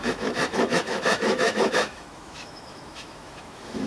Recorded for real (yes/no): no